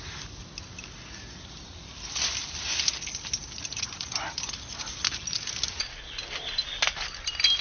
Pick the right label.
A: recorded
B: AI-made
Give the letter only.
A